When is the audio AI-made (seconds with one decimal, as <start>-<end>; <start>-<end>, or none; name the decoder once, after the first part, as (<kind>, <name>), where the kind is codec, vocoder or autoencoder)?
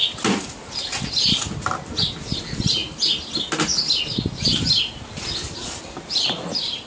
none